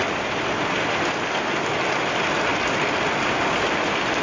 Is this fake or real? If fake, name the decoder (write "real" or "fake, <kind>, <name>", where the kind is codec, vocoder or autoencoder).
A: real